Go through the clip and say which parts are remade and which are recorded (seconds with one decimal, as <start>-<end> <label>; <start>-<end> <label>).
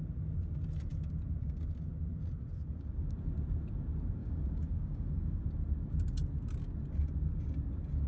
0.0-4.2 recorded; 4.2-5.4 remade; 5.4-8.1 recorded